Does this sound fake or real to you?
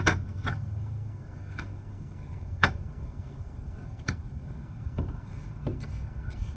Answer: fake